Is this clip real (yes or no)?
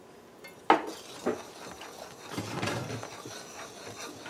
yes